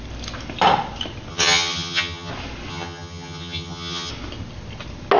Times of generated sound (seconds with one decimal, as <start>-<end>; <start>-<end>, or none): 1.3-2.3; 2.7-4.1